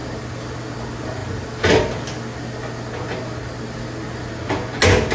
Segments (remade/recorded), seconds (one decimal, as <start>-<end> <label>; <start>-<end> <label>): 0.0-5.1 recorded